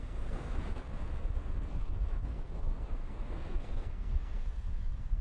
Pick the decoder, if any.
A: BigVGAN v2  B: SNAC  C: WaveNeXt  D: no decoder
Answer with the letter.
B